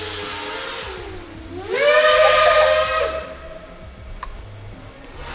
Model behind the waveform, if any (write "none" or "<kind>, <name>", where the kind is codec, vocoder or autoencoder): none